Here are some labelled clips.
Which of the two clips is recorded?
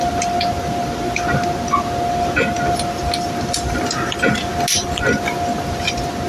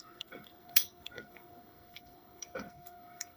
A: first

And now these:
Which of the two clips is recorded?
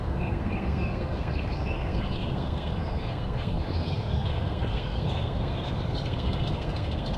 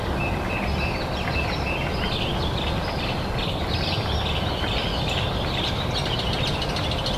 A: second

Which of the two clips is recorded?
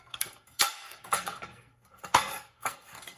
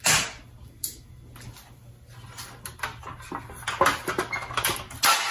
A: second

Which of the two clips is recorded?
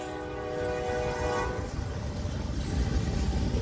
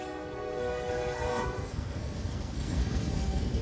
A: first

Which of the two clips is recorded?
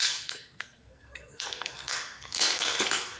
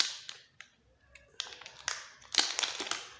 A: second